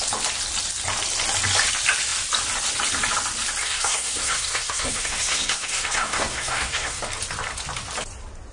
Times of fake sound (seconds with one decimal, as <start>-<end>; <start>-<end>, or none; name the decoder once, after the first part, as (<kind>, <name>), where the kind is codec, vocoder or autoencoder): 3.6-7.0 (codec, SNAC)

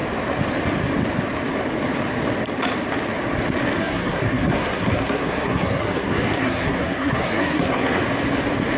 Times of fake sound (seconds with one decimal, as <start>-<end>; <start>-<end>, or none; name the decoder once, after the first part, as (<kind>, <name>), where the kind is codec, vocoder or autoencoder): 3.8-8.0 (codec, SNAC)

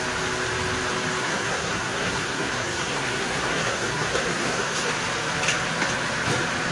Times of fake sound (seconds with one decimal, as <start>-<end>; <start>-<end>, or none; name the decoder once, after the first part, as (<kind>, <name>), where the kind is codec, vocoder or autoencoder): 1.2-4.9 (codec, SNAC)

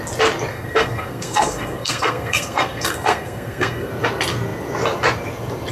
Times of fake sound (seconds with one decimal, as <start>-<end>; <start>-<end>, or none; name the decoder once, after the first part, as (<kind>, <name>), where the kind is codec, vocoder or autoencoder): 0.5-3.9 (codec, SNAC)

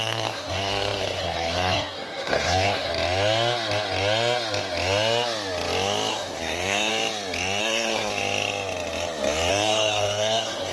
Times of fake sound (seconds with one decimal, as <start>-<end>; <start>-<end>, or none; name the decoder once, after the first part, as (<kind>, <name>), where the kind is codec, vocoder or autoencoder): 0.0-2.9 (codec, SNAC); 6.1-6.9; 7.6-8.1; 9.5-10.7